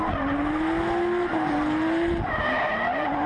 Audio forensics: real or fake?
real